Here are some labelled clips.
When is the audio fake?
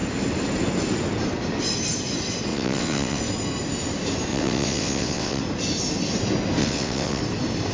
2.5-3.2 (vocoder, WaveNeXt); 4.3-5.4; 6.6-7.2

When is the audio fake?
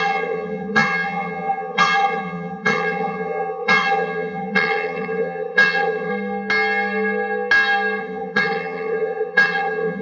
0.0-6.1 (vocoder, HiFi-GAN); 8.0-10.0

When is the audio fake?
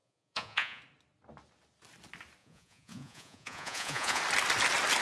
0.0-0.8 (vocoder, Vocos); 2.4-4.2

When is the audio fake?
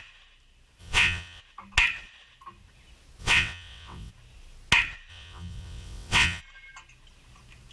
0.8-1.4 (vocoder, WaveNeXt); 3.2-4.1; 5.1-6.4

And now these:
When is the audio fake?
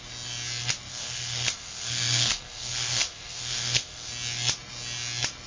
0.9-4.1 (codec, SNAC)